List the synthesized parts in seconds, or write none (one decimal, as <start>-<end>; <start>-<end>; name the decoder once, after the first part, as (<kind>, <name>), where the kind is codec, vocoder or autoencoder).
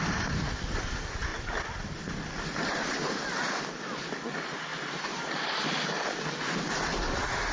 4.7-5.3 (vocoder, BigVGAN v2)